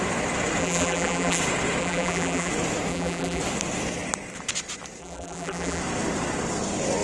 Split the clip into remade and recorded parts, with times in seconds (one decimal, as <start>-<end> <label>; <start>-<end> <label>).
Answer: 0.0-0.6 recorded; 0.6-1.4 remade; 1.4-1.8 recorded; 1.8-2.5 remade; 2.5-2.9 recorded; 2.9-3.4 remade; 3.4-5.0 recorded; 5.0-5.8 remade; 5.8-7.0 recorded